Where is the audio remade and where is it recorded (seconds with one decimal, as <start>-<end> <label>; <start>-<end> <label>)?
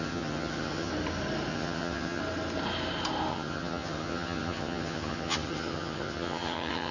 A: 0.0-0.9 remade; 0.9-1.5 recorded; 1.5-2.2 remade; 2.2-3.3 recorded; 3.3-6.9 remade